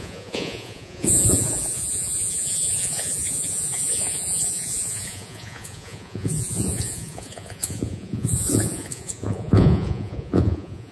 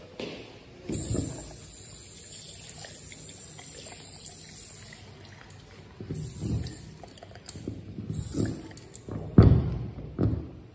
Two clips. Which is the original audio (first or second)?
second